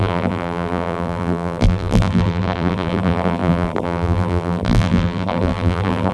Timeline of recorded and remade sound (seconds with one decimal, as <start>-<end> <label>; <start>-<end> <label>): 0.0-6.1 remade